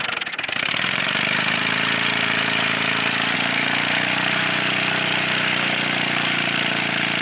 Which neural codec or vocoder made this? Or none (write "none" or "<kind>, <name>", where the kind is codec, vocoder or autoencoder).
vocoder, BigVGAN v2